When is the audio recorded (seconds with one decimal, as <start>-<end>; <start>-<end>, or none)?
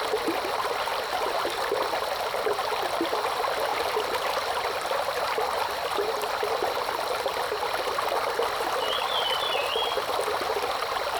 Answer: 0.0-3.7; 4.6-11.2